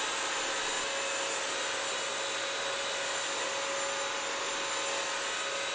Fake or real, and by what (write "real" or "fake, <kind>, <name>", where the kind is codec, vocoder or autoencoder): real